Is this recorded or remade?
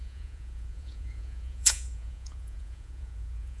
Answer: remade